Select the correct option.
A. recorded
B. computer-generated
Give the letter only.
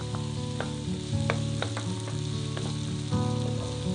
A